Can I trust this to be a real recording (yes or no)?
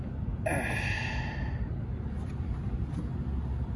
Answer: yes